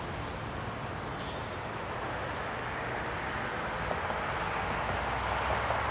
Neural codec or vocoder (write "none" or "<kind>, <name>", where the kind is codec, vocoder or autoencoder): none